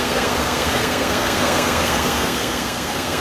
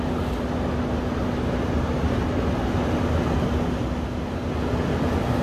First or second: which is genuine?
second